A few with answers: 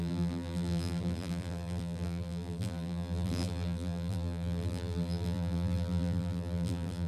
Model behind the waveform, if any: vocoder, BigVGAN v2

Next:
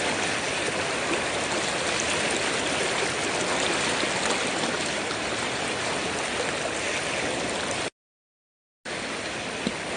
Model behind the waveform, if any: none